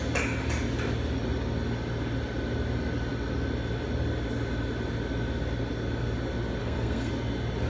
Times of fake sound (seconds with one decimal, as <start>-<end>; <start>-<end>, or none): 6.6-7.1